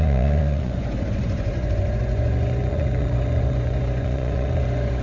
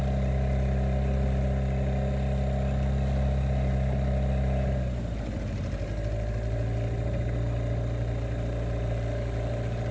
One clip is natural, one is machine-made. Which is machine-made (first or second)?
first